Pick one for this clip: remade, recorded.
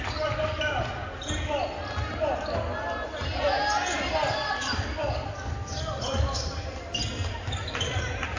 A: recorded